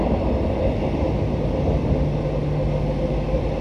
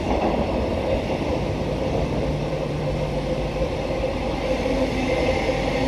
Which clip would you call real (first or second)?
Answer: first